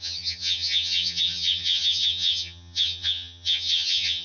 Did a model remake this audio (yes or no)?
yes